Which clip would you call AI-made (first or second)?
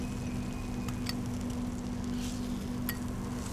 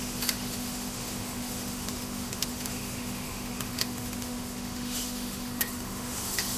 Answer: second